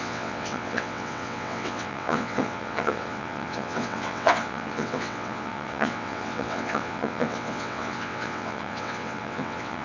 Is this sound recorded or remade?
remade